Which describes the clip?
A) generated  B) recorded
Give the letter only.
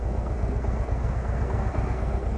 A